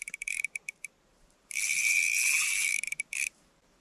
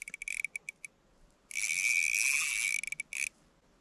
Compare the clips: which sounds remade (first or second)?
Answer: first